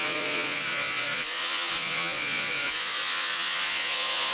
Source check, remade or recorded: remade